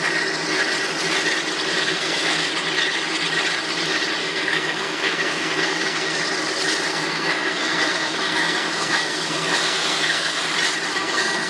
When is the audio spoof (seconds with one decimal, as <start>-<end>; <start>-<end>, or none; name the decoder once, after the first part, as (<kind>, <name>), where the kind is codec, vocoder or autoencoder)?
1.7-2.5 (codec, SNAC); 4.2-6.2; 6.9-10.4; 10.9-11.5